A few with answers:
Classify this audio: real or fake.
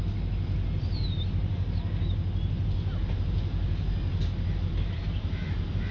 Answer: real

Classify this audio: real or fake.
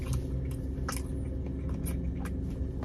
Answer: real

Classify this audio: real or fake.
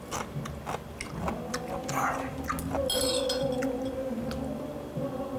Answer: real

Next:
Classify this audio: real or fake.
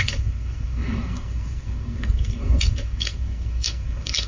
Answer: fake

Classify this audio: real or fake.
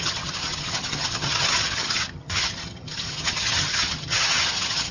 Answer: fake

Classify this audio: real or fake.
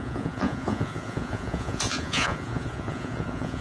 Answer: fake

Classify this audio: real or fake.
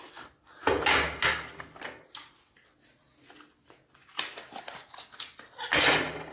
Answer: real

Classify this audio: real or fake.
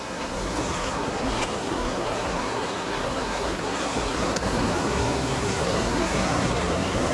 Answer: fake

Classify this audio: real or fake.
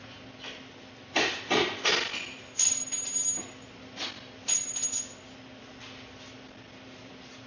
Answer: real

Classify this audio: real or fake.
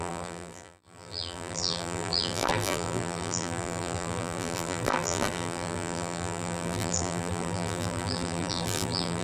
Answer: fake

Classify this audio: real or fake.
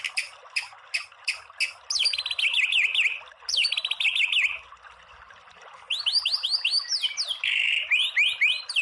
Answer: real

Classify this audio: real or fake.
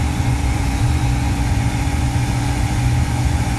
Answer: fake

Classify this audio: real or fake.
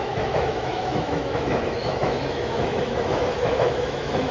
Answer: fake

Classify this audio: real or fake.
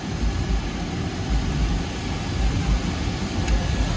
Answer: real